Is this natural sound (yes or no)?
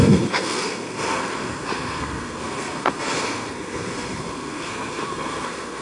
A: no